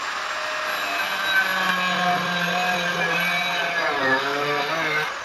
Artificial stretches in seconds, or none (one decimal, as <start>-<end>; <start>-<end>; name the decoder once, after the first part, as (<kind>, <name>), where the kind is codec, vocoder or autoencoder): 4.2-4.7 (codec, SNAC)